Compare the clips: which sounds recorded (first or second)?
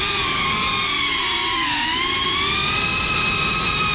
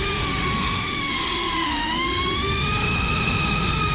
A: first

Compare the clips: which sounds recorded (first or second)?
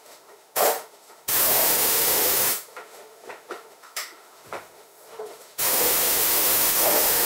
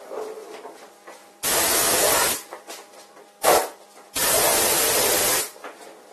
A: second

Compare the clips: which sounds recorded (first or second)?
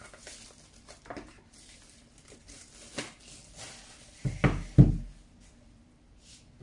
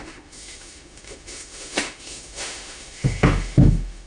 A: first